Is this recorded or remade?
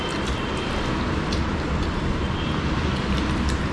recorded